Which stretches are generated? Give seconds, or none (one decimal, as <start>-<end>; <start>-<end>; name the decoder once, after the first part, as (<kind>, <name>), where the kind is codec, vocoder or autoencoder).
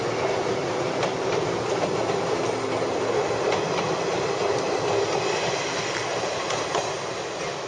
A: 0.6-1.5 (vocoder, BigVGAN v2); 6.1-6.8